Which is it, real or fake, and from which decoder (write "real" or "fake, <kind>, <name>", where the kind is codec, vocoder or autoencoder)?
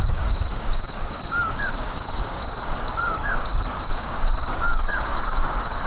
fake, codec, DAC